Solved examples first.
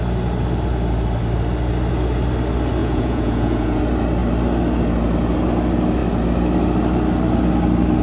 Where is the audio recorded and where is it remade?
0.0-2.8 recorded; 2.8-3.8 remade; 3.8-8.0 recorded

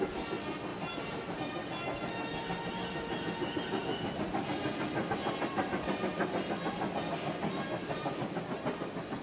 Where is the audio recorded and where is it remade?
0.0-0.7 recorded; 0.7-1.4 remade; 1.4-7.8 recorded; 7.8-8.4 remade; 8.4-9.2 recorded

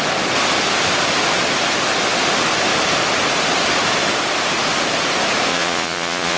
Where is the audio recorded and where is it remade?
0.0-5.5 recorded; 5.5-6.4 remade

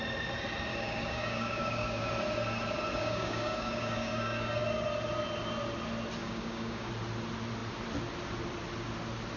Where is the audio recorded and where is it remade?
0.0-0.7 recorded; 0.7-2.1 remade; 2.1-3.0 recorded; 3.0-4.6 remade; 4.6-6.2 recorded; 6.2-6.9 remade; 6.9-9.4 recorded